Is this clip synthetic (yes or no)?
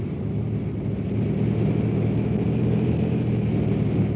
no